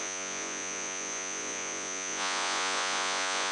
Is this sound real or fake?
fake